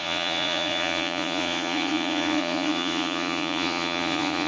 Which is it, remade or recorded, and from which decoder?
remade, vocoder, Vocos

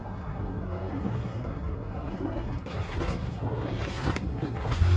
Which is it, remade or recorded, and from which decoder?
remade, codec, SNAC